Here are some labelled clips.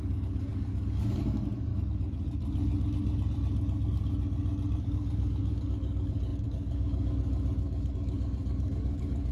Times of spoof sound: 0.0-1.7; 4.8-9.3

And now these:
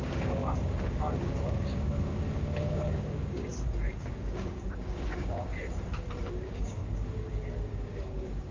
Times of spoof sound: 0.0-3.5; 4.0-5.5; 6.1-8.5

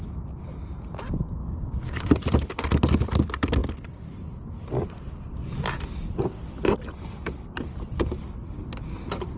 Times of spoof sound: 1.4-2.1

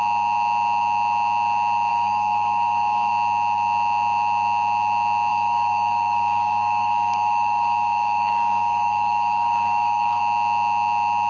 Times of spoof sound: 1.9-3.1; 5.3-10.2

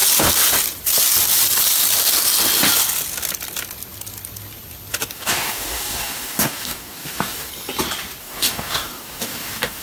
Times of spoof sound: 5.1-7.5; 8.2-9.8